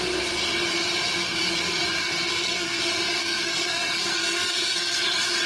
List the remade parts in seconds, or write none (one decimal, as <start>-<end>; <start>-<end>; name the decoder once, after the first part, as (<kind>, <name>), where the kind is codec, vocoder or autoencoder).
2.0-2.8 (codec, SNAC); 3.2-5.0

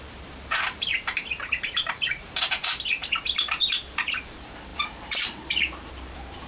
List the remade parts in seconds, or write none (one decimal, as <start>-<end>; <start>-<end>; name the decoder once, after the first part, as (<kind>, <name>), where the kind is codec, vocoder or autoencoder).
0.0-6.5 (vocoder, BigVGAN v2)

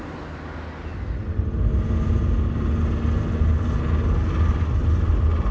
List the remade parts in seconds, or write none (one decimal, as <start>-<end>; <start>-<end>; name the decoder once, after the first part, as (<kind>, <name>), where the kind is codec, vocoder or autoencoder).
none

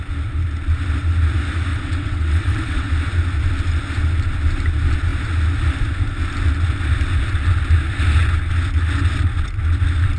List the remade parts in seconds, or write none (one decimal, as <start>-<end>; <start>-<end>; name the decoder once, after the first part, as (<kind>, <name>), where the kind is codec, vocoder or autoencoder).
1.7-2.9 (vocoder, WaveNeXt)

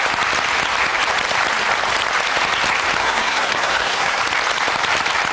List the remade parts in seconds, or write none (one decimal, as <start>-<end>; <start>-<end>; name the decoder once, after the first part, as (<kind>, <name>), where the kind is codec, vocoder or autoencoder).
3.0-4.2 (codec, SNAC)

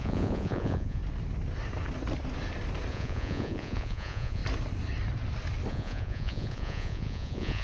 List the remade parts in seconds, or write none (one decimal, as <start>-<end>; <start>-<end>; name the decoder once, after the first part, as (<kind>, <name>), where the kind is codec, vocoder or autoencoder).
0.0-1.0 (vocoder, Vocos); 2.9-4.4; 5.7-7.6

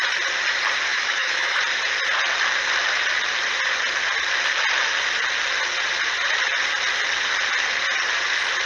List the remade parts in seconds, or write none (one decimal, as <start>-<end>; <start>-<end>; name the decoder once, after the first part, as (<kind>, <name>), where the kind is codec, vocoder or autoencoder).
0.9-1.6 (autoencoder, DAC-VAE)